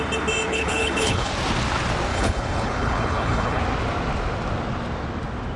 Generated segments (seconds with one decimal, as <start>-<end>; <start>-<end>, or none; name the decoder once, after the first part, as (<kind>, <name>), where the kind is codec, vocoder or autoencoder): 0.5-1.3 (codec, HILCodec); 2.1-3.6